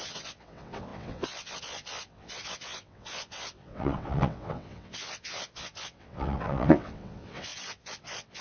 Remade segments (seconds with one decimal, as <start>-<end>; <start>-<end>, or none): 0.0-8.4